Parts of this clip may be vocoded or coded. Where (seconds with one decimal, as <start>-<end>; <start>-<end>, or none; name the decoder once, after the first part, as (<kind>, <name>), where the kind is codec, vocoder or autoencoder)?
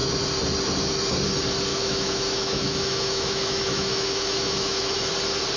1.7-5.1 (autoencoder, DAC-VAE)